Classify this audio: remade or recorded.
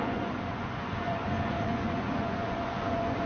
remade